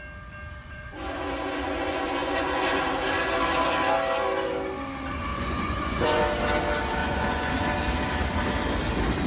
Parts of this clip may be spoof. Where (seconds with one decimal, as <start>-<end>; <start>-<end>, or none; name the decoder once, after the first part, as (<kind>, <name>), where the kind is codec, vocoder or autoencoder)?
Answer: 0.6-2.8 (vocoder, Vocos); 5.3-6.2; 7.0-7.5